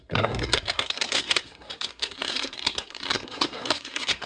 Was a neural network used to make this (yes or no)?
yes